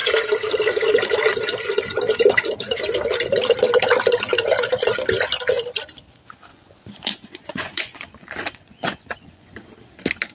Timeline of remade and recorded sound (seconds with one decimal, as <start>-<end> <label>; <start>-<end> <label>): 0.0-6.5 recorded; 6.5-9.7 remade; 9.7-10.3 recorded